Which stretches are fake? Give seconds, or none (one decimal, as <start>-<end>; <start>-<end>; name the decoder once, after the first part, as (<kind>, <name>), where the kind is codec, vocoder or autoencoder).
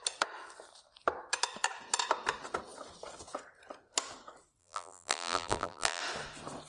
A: 4.6-6.0 (vocoder, BigVGAN v2)